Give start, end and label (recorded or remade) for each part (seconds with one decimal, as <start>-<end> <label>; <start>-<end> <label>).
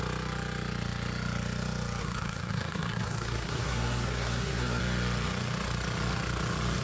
0.0-2.0 recorded; 2.0-4.8 remade; 4.8-6.8 recorded